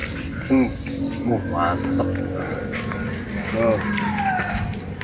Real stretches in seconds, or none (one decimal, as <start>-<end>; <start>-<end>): 0.0-5.0